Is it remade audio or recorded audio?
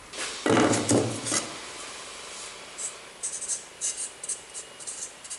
recorded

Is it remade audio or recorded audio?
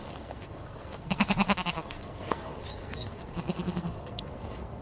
remade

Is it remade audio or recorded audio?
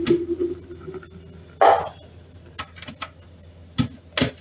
recorded